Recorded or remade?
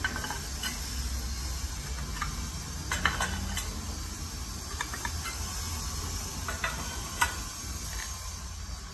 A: recorded